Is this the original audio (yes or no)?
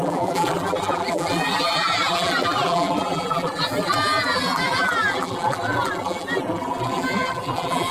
no